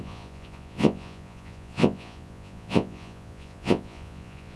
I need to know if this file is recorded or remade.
remade